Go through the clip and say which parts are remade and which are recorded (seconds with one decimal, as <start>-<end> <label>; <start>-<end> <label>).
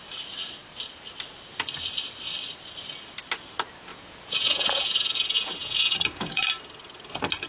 0.0-3.9 recorded; 3.9-6.5 remade; 6.5-7.5 recorded